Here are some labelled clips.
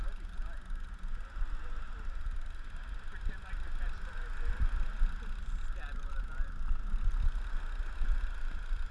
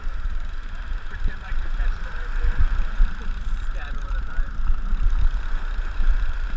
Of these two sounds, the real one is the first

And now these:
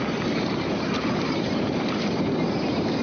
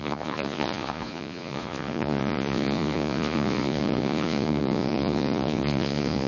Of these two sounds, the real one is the first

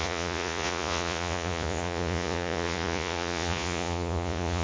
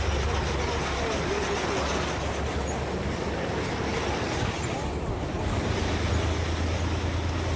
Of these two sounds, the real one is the second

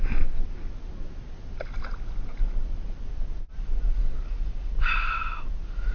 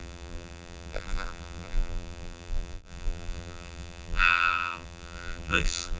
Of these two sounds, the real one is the first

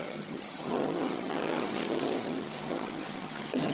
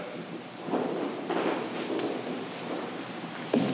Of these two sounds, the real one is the second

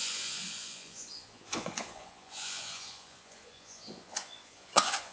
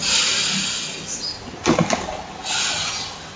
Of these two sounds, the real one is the second